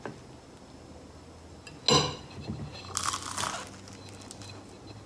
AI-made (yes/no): no